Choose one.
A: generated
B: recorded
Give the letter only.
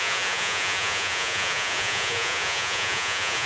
A